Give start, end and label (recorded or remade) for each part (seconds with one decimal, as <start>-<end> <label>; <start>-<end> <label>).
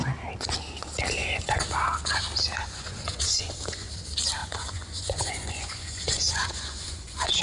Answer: 0.0-1.2 recorded; 1.2-1.7 remade; 1.7-2.6 recorded; 2.6-3.9 remade; 3.9-4.4 recorded; 4.4-7.4 remade